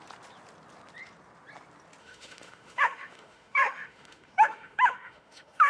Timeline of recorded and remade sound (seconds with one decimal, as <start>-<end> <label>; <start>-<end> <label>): 0.0-2.0 recorded; 2.0-5.7 remade